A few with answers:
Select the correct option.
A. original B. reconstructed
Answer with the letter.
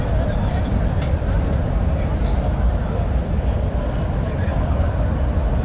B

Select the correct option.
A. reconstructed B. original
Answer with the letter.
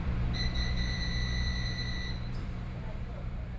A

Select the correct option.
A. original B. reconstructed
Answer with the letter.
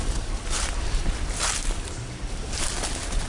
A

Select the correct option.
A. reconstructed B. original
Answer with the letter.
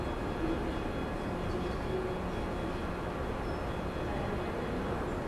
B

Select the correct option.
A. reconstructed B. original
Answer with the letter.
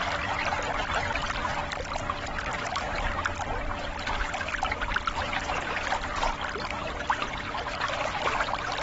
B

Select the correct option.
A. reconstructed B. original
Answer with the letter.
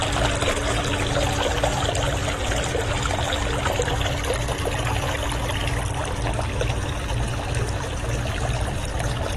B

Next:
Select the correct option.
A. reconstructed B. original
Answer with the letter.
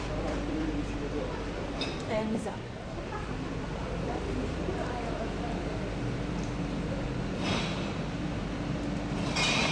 A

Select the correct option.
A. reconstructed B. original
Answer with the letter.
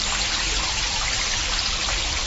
B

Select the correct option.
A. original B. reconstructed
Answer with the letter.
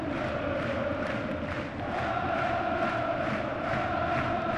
A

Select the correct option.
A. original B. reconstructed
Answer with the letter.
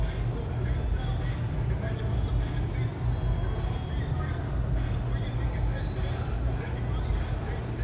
A